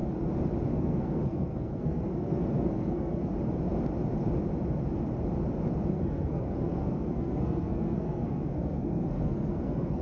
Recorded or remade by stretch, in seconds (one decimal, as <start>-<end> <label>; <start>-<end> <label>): 0.0-0.7 recorded; 0.7-3.3 remade; 3.3-5.9 recorded; 5.9-10.0 remade